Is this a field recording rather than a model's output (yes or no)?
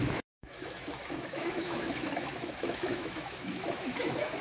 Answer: no